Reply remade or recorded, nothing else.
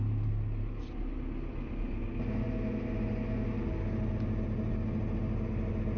recorded